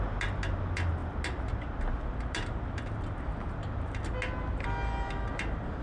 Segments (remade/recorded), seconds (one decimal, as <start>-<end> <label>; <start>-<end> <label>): 0.0-5.8 recorded